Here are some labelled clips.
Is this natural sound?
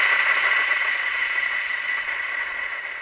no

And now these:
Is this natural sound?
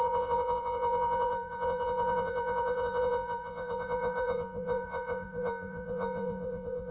no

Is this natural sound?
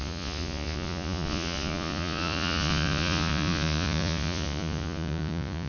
no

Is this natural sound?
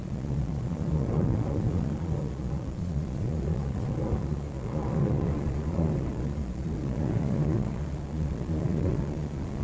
no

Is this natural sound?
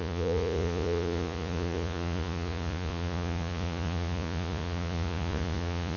no